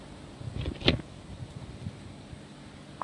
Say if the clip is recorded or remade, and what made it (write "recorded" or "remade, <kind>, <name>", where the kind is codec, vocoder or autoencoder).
recorded